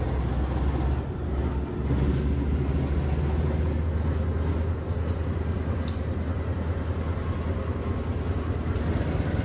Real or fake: real